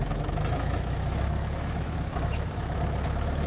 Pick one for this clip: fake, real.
fake